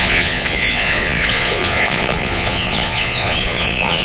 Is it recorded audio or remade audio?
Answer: remade